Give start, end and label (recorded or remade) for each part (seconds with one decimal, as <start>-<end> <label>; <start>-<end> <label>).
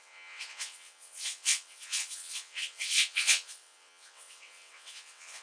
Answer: 0.0-5.4 remade